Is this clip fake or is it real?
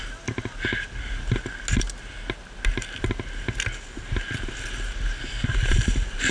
real